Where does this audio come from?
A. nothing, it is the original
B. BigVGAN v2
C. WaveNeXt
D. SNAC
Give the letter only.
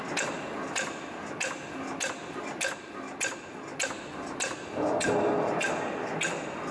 A